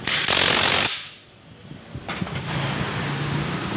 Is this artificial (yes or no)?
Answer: no